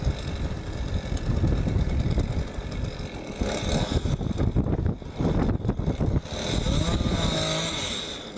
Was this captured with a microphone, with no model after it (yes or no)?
yes